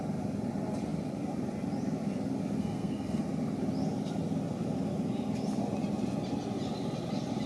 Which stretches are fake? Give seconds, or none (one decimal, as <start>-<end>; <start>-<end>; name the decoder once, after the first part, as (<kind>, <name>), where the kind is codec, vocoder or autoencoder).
2.6-3.2 (codec, SNAC)

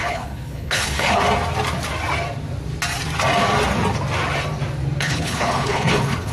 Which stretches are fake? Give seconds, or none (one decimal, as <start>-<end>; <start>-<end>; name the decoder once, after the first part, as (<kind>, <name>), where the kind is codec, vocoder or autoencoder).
0.0-1.2 (codec, HILCodec); 5.0-6.3

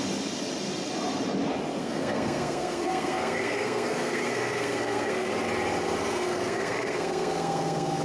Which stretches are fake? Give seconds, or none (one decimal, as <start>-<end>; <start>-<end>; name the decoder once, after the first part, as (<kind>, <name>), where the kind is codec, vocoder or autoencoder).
1.8-5.3 (codec, SNAC); 6.0-8.0

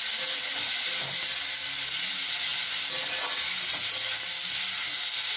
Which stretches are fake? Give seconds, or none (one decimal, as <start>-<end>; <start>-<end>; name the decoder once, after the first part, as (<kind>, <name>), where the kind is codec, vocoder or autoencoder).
none

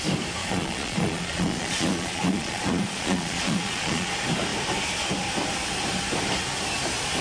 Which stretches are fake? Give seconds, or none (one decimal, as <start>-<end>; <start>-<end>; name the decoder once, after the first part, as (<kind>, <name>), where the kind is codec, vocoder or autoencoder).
0.4-4.1 (vocoder, Vocos)

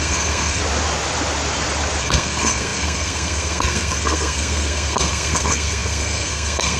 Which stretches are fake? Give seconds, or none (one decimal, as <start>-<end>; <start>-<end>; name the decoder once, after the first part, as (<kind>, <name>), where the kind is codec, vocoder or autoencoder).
0.0-0.6 (codec, SNAC); 2.0-6.8

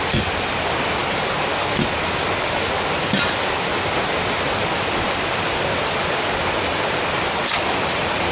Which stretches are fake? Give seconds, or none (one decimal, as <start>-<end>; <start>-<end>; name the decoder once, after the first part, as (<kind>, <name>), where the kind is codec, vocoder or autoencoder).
none

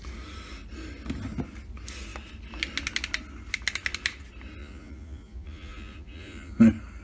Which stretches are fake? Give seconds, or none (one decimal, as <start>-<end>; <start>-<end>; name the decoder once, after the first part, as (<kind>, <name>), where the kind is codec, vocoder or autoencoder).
4.6-6.5 (vocoder, Vocos)